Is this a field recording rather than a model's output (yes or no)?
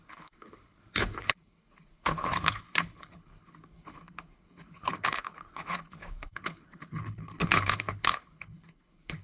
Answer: no